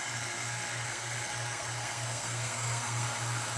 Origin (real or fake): fake